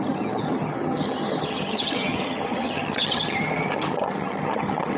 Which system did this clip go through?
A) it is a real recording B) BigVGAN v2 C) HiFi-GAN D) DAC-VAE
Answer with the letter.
C